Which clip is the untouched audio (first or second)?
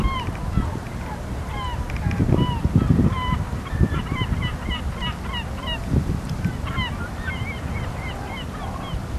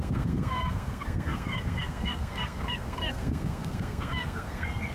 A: first